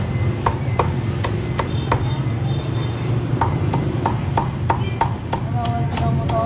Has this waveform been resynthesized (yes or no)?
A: no